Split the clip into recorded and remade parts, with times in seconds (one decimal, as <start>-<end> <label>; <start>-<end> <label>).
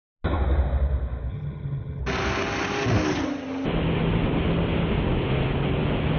0.0-1.3 recorded; 1.3-2.0 remade; 2.0-6.2 recorded